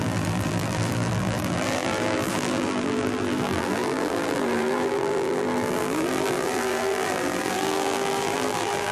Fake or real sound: fake